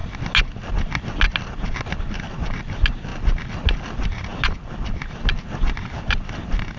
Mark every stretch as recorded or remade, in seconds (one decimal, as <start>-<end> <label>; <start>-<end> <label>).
0.0-6.8 recorded